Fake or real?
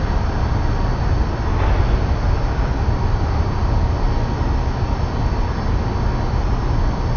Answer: real